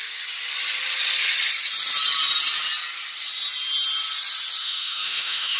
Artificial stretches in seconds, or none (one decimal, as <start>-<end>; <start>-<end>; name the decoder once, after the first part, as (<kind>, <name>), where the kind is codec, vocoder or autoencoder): 4.6-5.6 (autoencoder, DAC-VAE)